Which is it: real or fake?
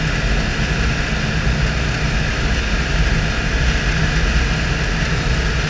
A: real